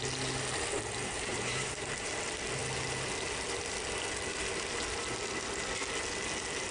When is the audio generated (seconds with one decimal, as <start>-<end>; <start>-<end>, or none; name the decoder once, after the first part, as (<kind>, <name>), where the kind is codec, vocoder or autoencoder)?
1.0-2.1 (vocoder, BigVGAN v2)